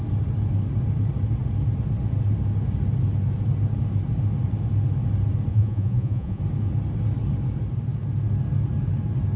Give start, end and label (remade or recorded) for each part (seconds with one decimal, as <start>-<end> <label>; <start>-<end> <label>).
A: 0.0-5.5 recorded; 5.5-6.4 remade; 6.4-9.4 recorded